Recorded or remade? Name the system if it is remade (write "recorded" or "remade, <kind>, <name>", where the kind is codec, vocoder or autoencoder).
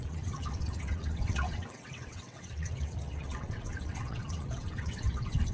remade, vocoder, WaveNeXt